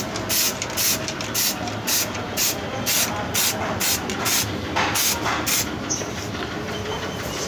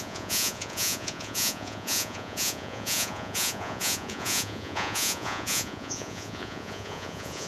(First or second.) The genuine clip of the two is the first